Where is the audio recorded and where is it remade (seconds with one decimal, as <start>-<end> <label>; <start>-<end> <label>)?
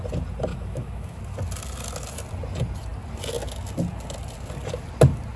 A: 0.0-0.5 recorded; 0.5-1.2 remade; 1.2-5.4 recorded